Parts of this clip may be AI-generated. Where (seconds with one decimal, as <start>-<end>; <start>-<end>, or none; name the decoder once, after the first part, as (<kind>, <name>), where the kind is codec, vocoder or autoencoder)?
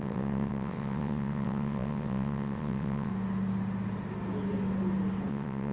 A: 0.0-3.1 (vocoder, WaveNeXt); 5.3-5.7